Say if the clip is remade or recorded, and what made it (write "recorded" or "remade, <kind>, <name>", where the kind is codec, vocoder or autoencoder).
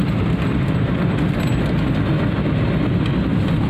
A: recorded